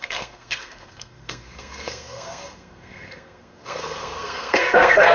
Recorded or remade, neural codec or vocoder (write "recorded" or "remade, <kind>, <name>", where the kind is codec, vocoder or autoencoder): remade, codec, SNAC